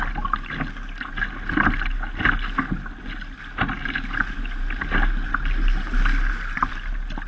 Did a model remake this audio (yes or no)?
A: no